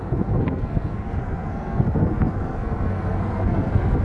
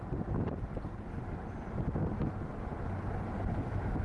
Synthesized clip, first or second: first